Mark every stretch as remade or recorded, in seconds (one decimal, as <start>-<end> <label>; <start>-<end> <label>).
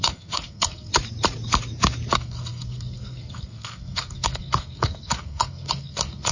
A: 0.0-0.9 remade; 0.9-2.1 recorded; 2.1-6.3 remade